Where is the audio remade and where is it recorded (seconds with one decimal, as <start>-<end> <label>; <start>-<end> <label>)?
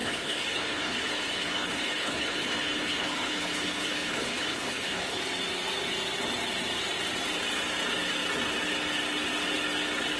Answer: 0.0-5.2 remade; 5.2-10.2 recorded